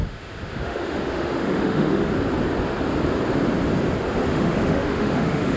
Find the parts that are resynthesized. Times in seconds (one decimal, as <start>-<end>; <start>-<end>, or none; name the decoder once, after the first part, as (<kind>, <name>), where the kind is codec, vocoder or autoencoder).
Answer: 0.0-2.1 (autoencoder, DAC-VAE); 4.3-5.6